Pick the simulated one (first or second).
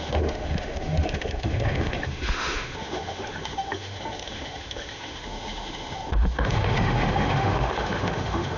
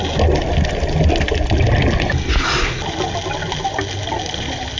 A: first